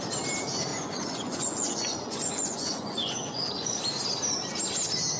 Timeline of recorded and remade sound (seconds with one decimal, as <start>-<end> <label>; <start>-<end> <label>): 0.0-0.7 recorded; 0.7-3.8 remade; 3.8-5.2 recorded